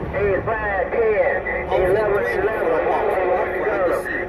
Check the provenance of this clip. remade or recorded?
recorded